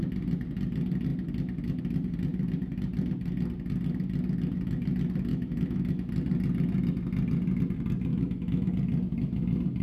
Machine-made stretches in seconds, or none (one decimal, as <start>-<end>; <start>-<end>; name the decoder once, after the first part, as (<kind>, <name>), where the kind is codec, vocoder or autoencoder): 5.3-6.1 (autoencoder, DAC-VAE); 8.1-8.7